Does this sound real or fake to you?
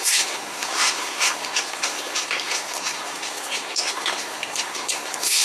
fake